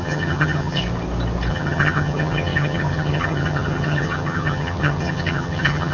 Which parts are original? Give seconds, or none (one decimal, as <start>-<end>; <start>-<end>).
0.8-1.5